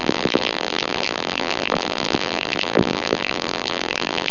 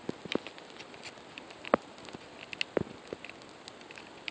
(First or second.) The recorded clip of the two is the second